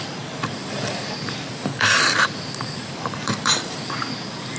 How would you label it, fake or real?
fake